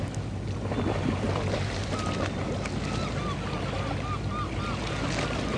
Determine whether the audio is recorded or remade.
recorded